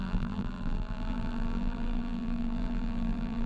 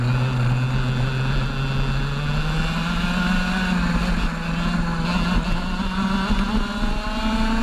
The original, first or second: second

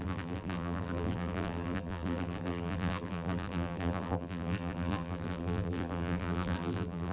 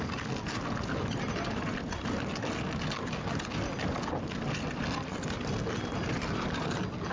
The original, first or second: second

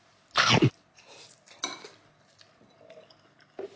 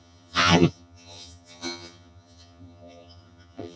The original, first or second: first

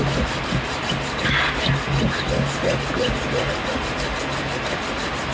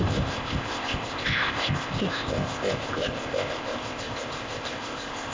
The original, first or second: first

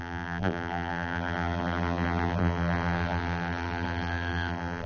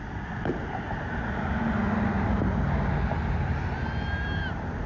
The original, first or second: second